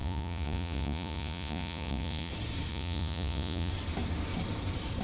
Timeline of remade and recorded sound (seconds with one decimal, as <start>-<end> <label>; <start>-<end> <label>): 0.0-2.3 remade; 2.3-2.7 recorded; 2.7-3.7 remade; 3.7-5.0 recorded